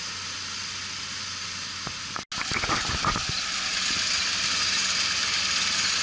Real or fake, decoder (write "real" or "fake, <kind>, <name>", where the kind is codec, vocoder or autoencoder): real